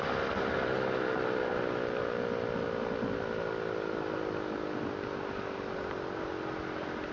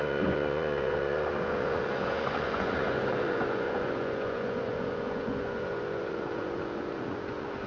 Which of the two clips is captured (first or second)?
first